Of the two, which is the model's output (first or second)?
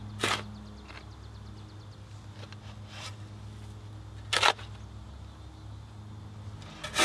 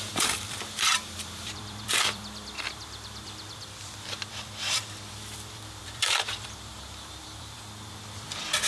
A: second